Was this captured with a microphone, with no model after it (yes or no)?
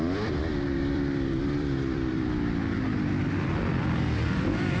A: no